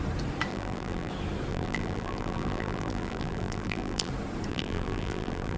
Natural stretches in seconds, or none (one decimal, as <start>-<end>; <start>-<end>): 0.0-0.5; 1.1-1.5; 4.1-4.5